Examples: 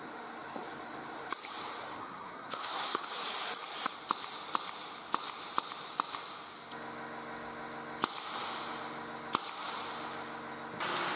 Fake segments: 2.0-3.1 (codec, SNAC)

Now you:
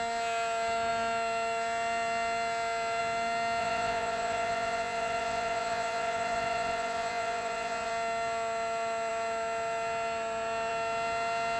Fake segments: 3.6-7.9 (vocoder, Vocos)

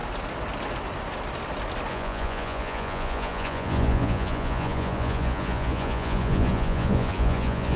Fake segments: 1.9-7.8 (vocoder, Vocos)